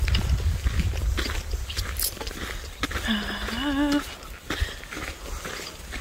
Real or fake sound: real